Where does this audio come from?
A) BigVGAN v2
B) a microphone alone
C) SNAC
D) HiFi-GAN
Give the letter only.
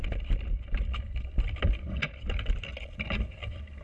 B